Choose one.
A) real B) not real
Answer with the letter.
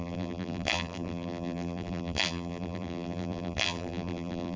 B